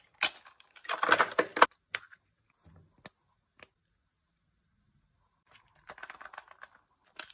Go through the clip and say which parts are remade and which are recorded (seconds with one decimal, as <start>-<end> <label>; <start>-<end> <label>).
0.0-7.3 recorded